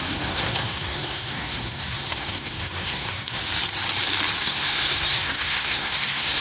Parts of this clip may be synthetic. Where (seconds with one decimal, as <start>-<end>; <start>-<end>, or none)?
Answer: 0.0-3.4; 4.4-6.4